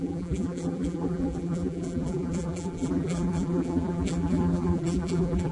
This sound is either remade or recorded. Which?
remade